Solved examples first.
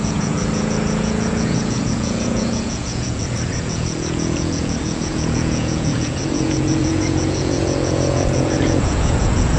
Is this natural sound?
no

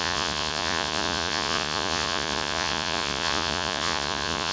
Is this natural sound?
no